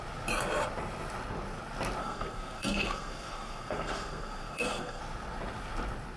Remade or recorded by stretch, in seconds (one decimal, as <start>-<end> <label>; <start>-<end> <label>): 0.0-2.0 recorded; 2.0-5.0 remade; 5.0-6.2 recorded